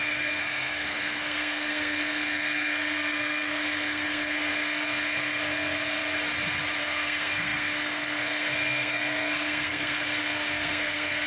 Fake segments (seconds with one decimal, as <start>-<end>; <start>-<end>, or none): 0.0-6.0; 6.8-11.3